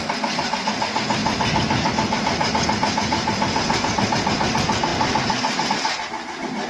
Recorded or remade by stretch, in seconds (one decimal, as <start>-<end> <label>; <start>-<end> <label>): 0.0-6.7 recorded